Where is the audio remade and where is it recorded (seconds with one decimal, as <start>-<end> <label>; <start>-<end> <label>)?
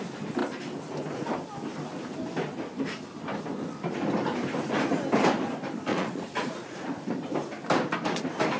0.0-5.9 recorded; 5.9-6.9 remade; 6.9-8.6 recorded